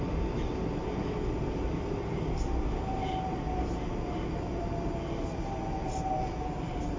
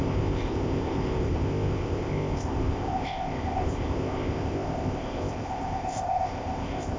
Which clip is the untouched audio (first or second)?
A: first